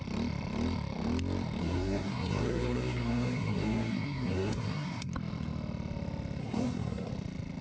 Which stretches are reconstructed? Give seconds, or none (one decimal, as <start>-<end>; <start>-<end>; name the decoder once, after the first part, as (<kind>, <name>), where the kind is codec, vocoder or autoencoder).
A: 1.6-5.1 (codec, SNAC); 6.4-7.1